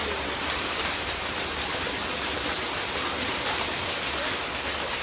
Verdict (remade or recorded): recorded